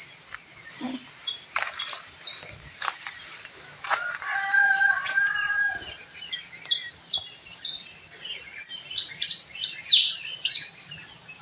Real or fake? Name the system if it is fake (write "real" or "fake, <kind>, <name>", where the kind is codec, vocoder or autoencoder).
fake, vocoder, BigVGAN v2